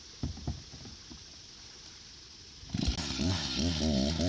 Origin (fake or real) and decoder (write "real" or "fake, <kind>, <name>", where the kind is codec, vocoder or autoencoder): real